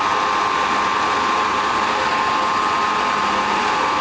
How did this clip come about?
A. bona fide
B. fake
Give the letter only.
A